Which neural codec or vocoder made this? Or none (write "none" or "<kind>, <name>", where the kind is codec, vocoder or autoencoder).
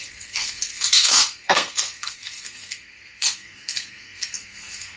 codec, SNAC